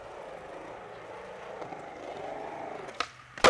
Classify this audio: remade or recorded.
recorded